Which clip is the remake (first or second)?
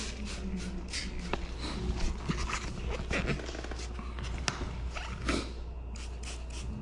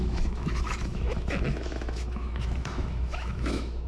second